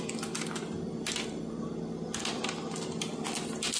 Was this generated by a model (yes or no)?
no